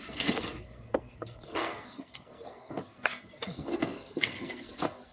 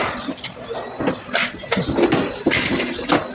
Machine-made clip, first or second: first